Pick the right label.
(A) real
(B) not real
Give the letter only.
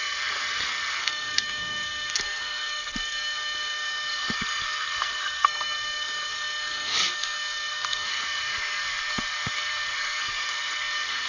B